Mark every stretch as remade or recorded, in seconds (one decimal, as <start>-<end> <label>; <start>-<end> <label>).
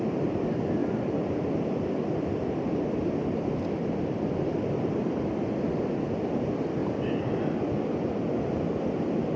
0.0-9.4 recorded